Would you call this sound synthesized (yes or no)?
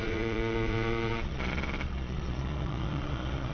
yes